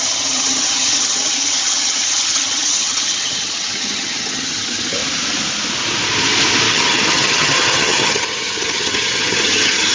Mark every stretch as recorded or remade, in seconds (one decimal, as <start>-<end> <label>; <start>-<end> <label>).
0.0-5.0 remade; 5.0-6.7 recorded; 6.7-9.9 remade